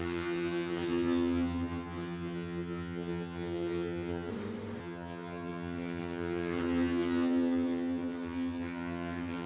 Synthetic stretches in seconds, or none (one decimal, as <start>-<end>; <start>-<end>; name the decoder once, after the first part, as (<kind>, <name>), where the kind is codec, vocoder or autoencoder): 0.0-4.3 (vocoder, HiFi-GAN); 4.8-9.5